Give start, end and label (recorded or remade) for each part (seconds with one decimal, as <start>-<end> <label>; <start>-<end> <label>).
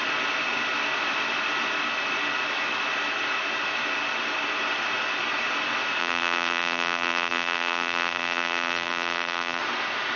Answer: 0.0-6.0 recorded; 6.0-9.6 remade; 9.6-10.2 recorded